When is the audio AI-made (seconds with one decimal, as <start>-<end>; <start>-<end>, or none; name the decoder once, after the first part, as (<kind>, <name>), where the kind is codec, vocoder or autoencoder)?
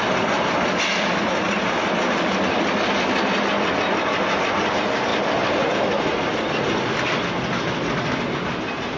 none